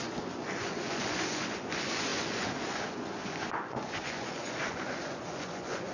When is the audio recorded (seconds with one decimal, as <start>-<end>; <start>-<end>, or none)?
none